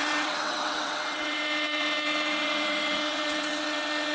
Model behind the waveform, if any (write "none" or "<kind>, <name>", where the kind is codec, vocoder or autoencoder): vocoder, WaveNeXt